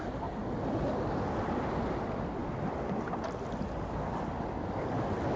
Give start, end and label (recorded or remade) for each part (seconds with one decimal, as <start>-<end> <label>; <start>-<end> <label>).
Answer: 0.0-5.4 recorded